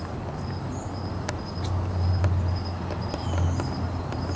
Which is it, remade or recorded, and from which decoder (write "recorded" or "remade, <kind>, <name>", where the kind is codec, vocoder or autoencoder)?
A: recorded